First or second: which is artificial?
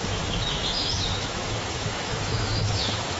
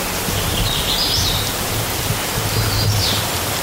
first